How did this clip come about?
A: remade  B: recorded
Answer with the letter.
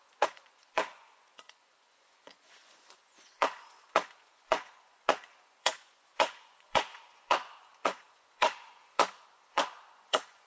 A